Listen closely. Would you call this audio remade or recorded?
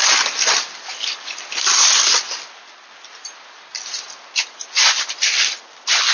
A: recorded